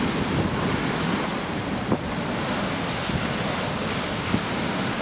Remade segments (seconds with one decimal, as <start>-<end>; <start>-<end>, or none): none